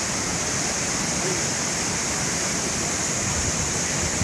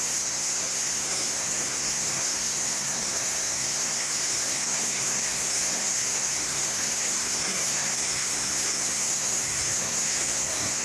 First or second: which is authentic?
first